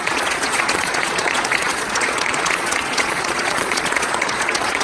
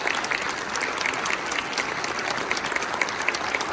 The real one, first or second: second